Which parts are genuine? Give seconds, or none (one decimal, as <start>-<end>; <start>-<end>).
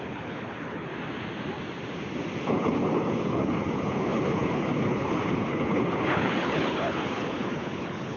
0.9-2.5